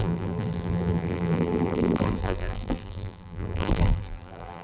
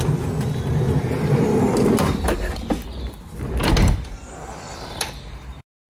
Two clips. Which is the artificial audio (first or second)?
first